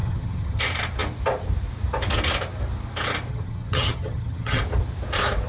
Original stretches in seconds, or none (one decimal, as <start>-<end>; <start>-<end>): 0.6-3.3; 4.6-5.5